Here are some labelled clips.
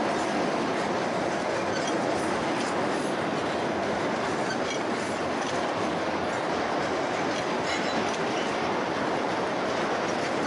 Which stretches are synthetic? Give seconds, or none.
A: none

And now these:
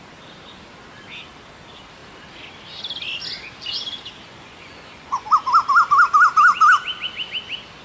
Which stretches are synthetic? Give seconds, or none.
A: 4.3-5.3 (vocoder, Vocos)

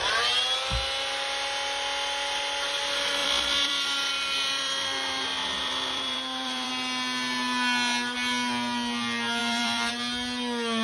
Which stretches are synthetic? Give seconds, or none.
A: 3.2-6.7 (vocoder, BigVGAN v2); 9.4-9.9

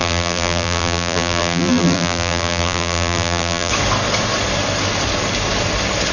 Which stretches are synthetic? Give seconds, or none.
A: 0.0-3.7 (vocoder, BigVGAN v2)

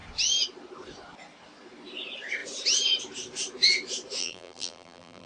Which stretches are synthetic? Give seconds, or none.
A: 4.2-5.3 (vocoder, BigVGAN v2)

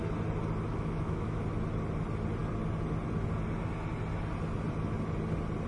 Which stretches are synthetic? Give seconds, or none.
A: 0.7-1.4 (autoencoder, DAC-VAE)

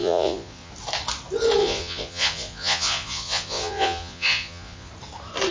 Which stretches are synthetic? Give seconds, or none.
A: 0.0-0.7 (vocoder, Vocos); 1.6-4.9